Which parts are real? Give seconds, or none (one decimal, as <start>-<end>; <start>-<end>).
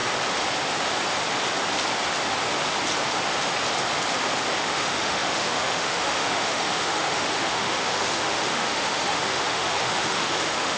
0.0-4.6